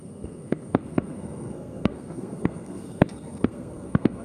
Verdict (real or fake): fake